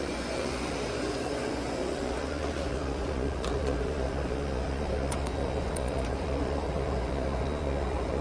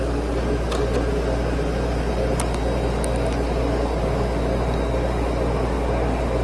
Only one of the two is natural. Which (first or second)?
second